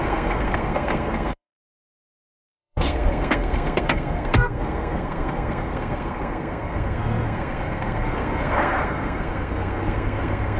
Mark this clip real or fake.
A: fake